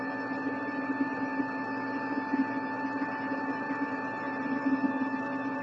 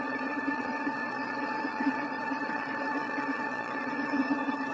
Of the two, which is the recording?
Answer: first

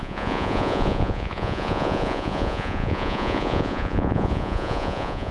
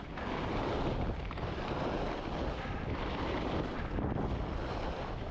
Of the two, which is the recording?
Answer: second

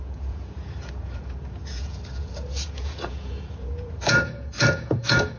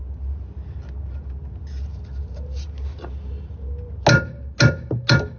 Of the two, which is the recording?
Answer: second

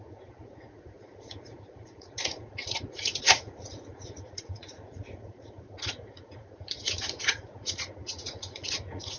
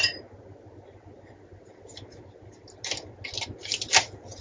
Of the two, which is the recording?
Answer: second